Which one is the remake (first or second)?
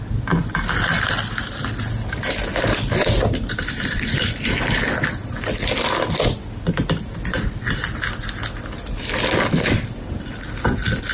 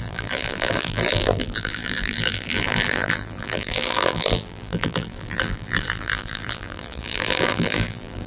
second